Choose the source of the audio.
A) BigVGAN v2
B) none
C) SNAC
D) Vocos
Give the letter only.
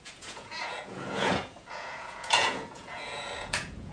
D